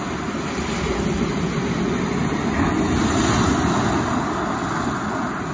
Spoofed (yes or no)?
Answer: no